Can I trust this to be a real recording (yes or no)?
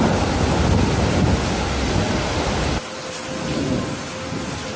yes